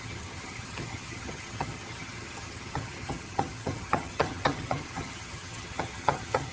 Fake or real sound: fake